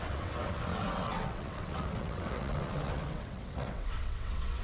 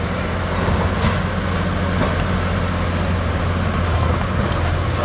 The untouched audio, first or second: second